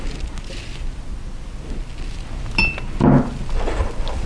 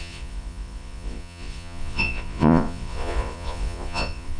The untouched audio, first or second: first